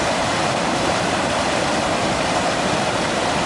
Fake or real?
fake